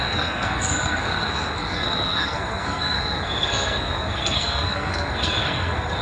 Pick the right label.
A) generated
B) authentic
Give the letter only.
A